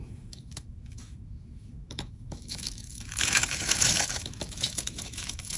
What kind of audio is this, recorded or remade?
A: remade